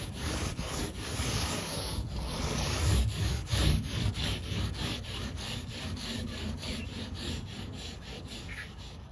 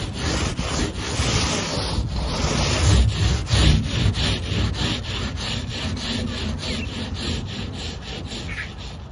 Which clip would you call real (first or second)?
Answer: second